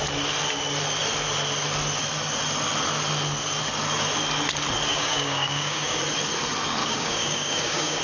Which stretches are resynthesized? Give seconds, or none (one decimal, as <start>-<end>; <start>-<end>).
4.9-6.0; 6.8-8.0